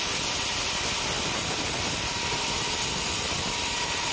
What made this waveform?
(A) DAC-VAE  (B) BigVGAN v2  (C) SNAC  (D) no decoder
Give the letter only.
D